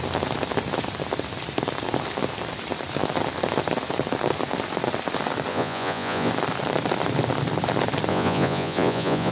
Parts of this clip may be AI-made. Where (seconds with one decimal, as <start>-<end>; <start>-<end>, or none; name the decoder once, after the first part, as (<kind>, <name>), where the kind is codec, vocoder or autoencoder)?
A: 5.5-6.3 (vocoder, Vocos); 8.1-9.3